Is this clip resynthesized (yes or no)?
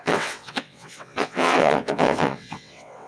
yes